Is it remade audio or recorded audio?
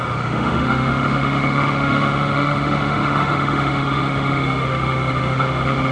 remade